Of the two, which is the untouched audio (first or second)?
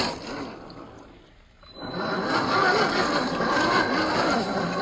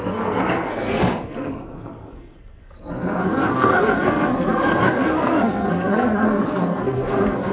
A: first